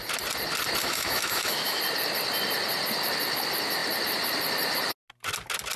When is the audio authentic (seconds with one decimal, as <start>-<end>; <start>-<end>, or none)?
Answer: 0.0-0.8; 1.8-5.8